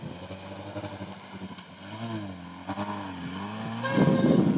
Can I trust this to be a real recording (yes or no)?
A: yes